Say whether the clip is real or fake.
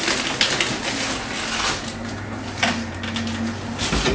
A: real